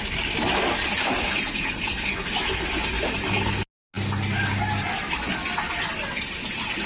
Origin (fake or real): real